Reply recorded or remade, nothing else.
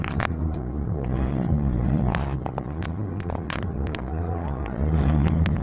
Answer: remade